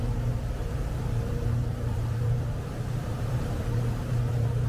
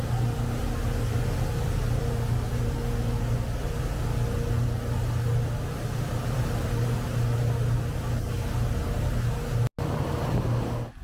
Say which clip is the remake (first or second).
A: first